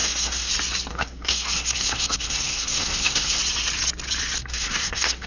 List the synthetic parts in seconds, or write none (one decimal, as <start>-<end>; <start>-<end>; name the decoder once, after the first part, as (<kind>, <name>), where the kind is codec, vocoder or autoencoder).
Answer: 0.0-0.5 (codec, SNAC); 0.9-3.4; 4.4-5.3